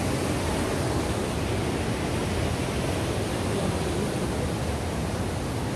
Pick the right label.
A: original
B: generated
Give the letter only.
A